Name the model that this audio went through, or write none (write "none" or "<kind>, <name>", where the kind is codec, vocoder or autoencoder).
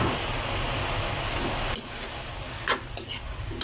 none